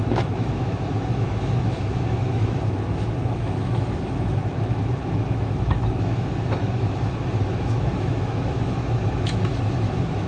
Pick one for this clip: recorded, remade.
remade